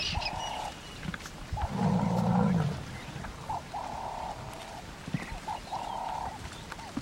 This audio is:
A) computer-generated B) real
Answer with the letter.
B